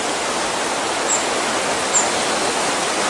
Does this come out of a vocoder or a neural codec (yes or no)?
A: no